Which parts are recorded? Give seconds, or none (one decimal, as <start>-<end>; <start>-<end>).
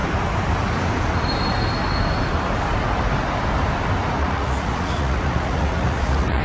0.0-4.2